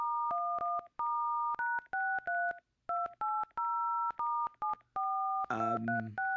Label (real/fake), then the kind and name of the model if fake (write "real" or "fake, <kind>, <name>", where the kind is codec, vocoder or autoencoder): real